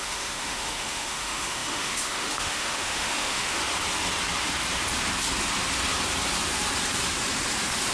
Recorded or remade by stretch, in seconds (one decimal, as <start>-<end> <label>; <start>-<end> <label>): 0.0-3.6 remade; 3.6-7.9 recorded